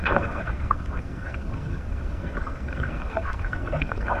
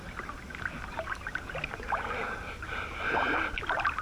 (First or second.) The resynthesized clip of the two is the first